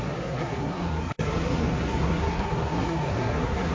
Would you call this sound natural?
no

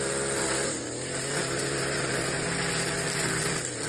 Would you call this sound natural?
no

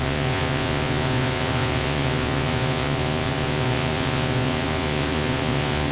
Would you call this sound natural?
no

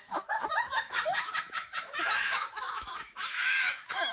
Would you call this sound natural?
no